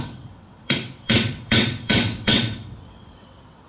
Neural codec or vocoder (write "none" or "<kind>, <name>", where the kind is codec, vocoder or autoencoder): vocoder, WaveNeXt